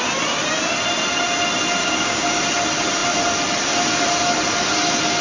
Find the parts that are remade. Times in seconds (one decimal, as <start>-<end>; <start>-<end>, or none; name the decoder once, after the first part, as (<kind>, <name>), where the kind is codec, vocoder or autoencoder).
1.8-2.4 (codec, DAC)